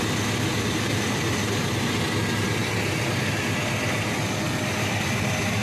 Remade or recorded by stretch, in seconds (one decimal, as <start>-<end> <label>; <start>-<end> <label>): 0.0-0.9 recorded; 0.9-1.6 remade; 1.6-5.6 recorded